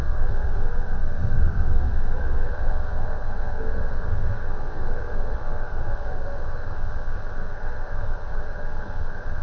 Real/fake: fake